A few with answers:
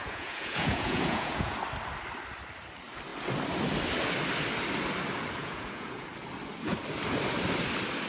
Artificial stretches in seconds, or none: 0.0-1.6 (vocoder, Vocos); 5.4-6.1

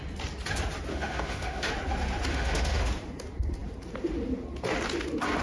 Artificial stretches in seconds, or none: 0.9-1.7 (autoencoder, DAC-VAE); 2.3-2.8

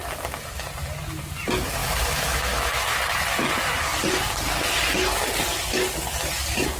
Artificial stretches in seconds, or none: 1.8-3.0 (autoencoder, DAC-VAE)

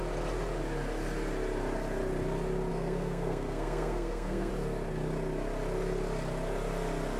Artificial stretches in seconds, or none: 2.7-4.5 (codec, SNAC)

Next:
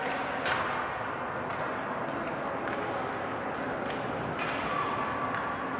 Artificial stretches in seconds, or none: none